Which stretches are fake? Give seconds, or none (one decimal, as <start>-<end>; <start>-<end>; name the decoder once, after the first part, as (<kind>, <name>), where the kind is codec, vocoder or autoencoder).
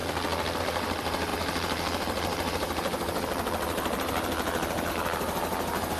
0.6-6.0 (vocoder, BigVGAN v2)